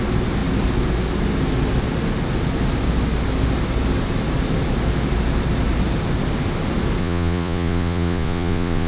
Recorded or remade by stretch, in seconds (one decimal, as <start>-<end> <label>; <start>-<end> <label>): 0.0-7.0 recorded; 7.0-8.9 remade